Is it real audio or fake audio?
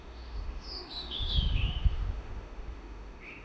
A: fake